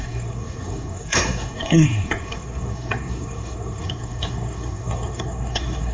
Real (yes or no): no